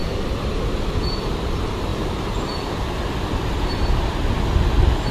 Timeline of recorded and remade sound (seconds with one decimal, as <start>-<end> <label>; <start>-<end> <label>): 0.0-5.1 recorded